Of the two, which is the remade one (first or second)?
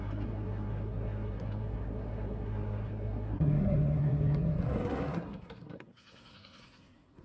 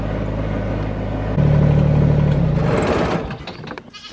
first